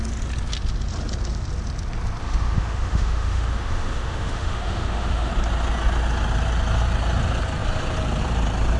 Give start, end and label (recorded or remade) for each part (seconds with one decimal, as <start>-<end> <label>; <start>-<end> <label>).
0.0-2.2 recorded; 2.2-5.3 remade; 5.3-8.8 recorded